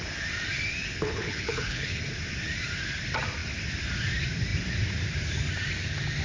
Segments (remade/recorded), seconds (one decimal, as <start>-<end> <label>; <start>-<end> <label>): 0.0-0.9 recorded; 0.9-2.0 remade; 2.0-6.2 recorded